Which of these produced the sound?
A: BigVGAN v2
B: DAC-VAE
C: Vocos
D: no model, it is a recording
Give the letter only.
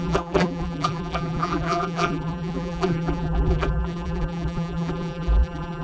A